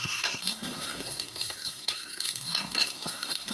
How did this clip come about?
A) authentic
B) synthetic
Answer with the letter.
B